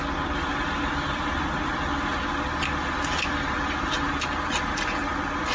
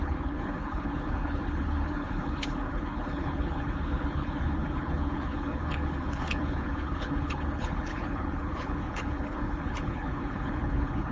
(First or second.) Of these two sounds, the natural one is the first